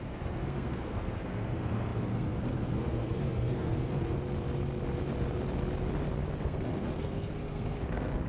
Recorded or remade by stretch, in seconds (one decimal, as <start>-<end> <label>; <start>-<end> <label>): 0.0-4.2 remade; 4.2-6.4 recorded; 6.4-8.3 remade